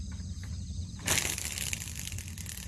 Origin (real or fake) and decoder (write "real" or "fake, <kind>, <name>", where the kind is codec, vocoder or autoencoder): real